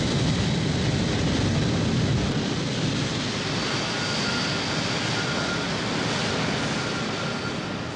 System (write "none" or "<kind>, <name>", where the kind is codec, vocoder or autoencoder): none